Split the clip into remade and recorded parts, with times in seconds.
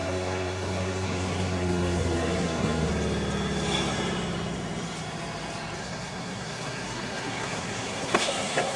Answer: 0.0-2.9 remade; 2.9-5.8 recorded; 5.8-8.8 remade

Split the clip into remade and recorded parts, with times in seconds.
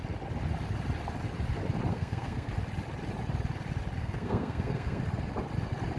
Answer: 0.0-1.9 recorded; 1.9-2.5 remade; 2.5-4.0 recorded; 4.0-5.0 remade; 5.0-6.0 recorded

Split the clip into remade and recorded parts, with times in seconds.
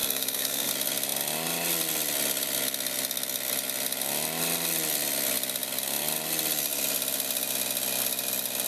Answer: 0.0-0.7 remade; 0.7-8.7 recorded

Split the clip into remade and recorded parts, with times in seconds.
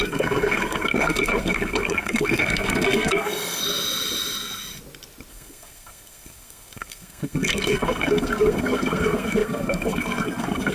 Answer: 0.0-3.6 remade; 3.6-5.3 recorded; 5.3-10.7 remade